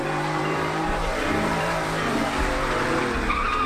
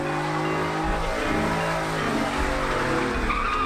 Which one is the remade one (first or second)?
first